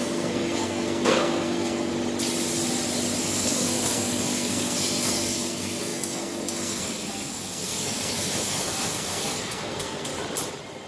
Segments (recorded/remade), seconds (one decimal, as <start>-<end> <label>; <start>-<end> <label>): 0.0-1.9 remade; 1.9-3.2 recorded; 3.2-10.1 remade; 10.1-10.9 recorded